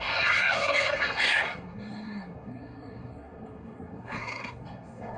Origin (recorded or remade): remade